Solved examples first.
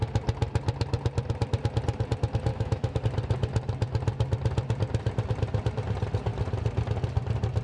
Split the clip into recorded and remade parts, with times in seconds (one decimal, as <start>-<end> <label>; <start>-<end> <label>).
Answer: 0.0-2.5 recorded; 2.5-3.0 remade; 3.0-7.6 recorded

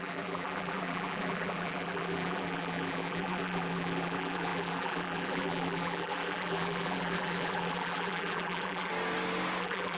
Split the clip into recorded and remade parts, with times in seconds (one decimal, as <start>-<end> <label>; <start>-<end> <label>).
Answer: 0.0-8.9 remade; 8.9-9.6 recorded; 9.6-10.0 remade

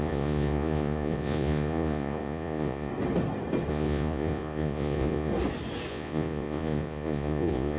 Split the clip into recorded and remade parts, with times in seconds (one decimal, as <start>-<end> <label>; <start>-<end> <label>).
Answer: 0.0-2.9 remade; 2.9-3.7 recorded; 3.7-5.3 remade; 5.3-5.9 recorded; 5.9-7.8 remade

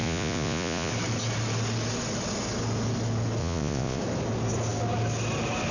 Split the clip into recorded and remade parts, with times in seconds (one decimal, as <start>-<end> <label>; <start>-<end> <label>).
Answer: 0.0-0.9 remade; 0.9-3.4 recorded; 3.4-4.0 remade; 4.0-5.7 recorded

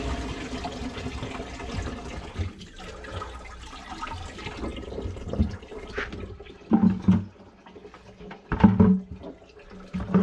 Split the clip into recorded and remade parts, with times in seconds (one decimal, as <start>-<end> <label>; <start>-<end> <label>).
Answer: 0.0-4.7 recorded; 4.7-6.1 remade; 6.1-10.2 recorded

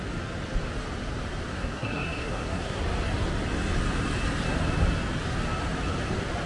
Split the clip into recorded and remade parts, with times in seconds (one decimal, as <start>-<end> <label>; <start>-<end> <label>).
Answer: 0.0-1.5 recorded; 1.5-2.8 remade; 2.8-6.5 recorded

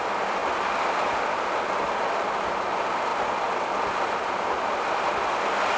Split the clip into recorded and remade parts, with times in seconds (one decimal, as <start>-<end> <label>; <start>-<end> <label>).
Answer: 0.0-5.8 recorded

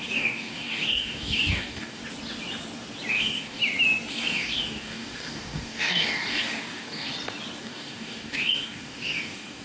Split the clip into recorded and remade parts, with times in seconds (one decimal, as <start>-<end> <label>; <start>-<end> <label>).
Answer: 0.0-2.0 remade; 2.0-3.1 recorded; 3.1-3.6 remade; 3.6-4.1 recorded; 4.1-7.1 remade; 7.1-7.6 recorded; 7.6-9.6 remade